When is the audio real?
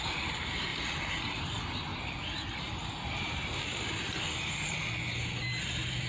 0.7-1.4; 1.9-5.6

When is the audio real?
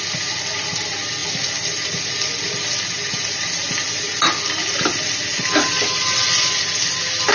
0.0-1.2; 4.0-7.3